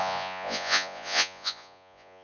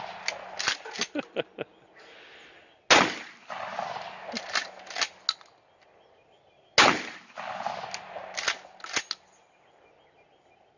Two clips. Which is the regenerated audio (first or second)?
first